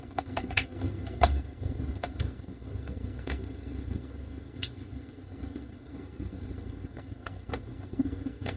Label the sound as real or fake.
fake